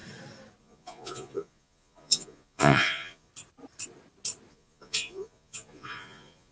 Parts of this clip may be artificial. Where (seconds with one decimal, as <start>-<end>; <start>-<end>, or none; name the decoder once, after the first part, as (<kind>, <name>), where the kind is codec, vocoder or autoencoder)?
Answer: 0.6-3.3 (vocoder, Vocos); 4.5-6.5